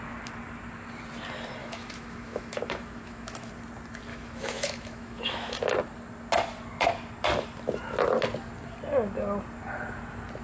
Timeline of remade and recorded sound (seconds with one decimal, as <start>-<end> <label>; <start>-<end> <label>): 0.0-1.6 recorded; 1.6-3.5 remade; 3.5-4.1 recorded; 4.1-5.7 remade; 5.7-10.4 recorded